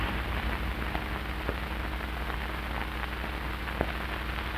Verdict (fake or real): real